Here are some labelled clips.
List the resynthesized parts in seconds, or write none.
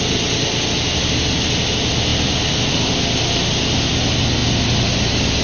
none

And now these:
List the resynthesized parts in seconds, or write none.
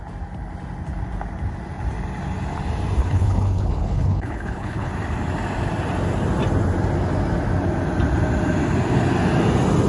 3.0-4.9 (codec, HILCodec)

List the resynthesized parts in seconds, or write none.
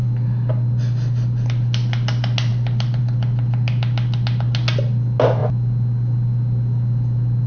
none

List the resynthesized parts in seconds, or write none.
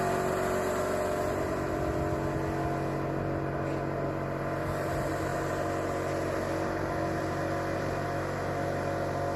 none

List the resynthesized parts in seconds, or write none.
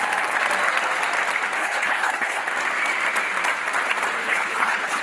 1.6-2.4 (codec, HILCodec); 4.2-5.0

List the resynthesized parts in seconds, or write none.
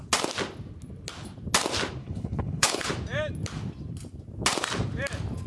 2.0-2.9 (codec, HILCodec)